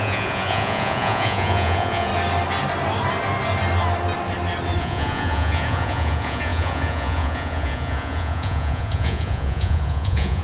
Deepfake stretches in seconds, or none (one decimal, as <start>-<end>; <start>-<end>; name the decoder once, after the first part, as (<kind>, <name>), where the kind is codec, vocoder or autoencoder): 0.0-2.1 (vocoder, Vocos); 4.8-10.4